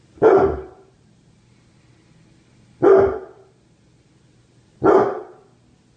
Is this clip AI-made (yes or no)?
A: no